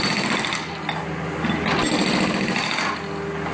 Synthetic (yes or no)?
no